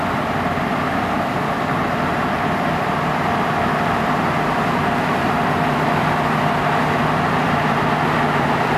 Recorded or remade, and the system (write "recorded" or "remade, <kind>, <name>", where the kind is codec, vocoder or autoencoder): remade, vocoder, BigVGAN v2